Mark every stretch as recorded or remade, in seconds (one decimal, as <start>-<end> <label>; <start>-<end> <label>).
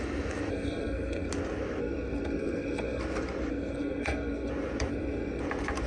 0.0-0.5 recorded; 0.5-1.3 remade; 1.3-1.8 recorded; 1.8-3.0 remade; 3.0-3.5 recorded; 3.5-4.5 remade; 4.5-4.9 recorded; 4.9-5.4 remade; 5.4-5.9 recorded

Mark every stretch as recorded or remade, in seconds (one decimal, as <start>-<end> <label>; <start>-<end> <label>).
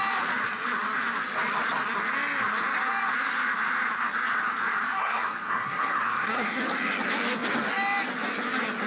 0.0-5.0 recorded; 5.0-6.6 remade; 6.6-8.9 recorded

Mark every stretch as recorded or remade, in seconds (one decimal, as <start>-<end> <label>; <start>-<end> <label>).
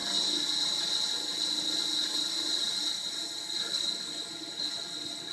0.0-5.3 recorded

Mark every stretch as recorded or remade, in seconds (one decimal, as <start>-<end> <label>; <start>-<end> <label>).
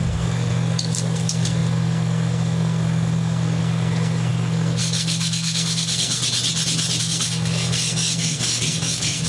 0.0-6.2 remade; 6.2-7.0 recorded; 7.0-9.3 remade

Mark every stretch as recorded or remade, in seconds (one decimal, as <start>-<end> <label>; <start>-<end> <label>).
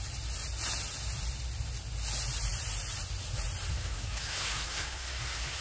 0.0-3.7 recorded; 3.7-5.6 remade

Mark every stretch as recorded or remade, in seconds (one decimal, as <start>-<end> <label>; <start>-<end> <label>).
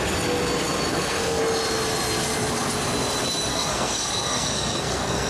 0.0-0.9 recorded; 0.9-1.4 remade; 1.4-3.5 recorded; 3.5-5.3 remade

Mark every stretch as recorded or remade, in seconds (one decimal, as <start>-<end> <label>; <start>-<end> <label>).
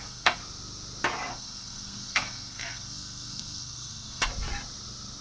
0.0-0.4 remade; 0.4-1.3 recorded; 1.3-4.3 remade; 4.3-5.2 recorded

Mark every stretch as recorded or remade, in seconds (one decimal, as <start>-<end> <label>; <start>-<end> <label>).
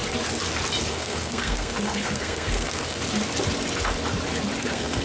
0.0-0.9 recorded; 0.9-3.0 remade; 3.0-4.6 recorded; 4.6-5.0 remade